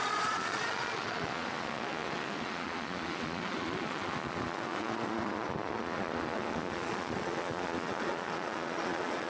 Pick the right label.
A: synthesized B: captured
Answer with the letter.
A